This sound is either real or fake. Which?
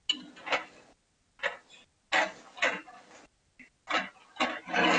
real